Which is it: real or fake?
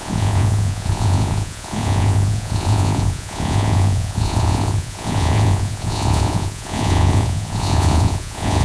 fake